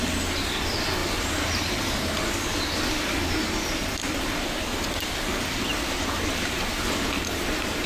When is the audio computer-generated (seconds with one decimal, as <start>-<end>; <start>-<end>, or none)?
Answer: none